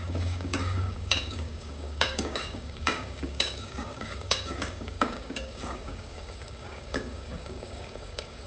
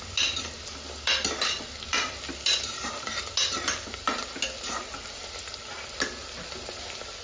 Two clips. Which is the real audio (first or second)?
second